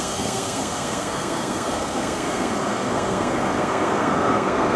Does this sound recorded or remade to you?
remade